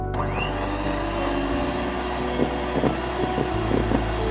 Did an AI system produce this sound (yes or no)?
no